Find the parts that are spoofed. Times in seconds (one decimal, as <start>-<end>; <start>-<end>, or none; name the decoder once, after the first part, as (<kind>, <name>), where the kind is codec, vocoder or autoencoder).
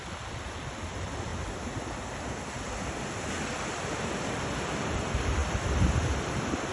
0.0-1.3 (vocoder, BigVGAN v2); 4.3-5.4